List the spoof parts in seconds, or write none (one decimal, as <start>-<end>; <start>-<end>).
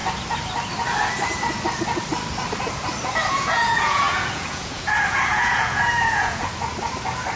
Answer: 3.3-6.5